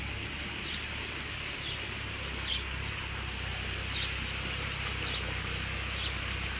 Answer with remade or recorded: recorded